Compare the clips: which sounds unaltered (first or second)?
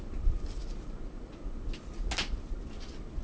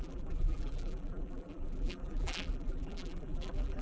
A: first